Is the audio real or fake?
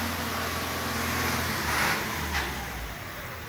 real